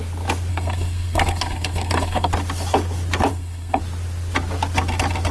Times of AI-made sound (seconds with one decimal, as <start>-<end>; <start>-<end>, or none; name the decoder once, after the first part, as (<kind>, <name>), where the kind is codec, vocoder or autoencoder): 0.5-2.3 (codec, SNAC); 3.3-3.8